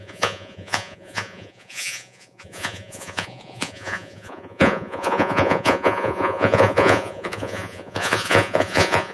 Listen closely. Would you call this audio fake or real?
fake